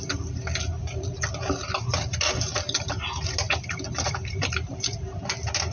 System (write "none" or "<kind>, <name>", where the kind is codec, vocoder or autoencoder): none